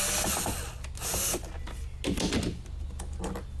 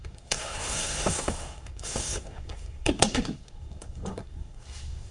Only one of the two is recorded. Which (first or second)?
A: first